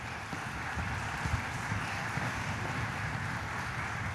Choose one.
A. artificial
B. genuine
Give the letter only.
B